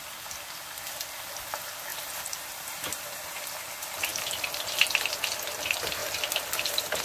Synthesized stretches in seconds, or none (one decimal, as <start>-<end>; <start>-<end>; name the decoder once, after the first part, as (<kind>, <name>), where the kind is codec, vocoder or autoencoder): 1.9-3.4 (vocoder, BigVGAN v2)